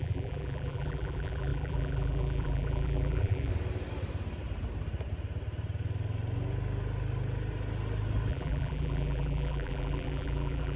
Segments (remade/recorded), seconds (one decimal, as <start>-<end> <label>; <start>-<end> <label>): 0.0-3.5 remade; 3.5-8.3 recorded; 8.3-10.8 remade